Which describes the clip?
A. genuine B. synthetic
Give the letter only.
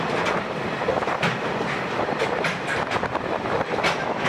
A